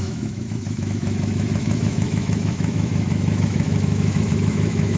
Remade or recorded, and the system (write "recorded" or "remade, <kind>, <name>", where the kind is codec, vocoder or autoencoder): remade, autoencoder, DAC-VAE